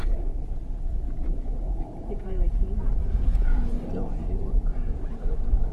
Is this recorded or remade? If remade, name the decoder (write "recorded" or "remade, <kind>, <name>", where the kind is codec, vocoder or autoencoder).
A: remade, vocoder, Vocos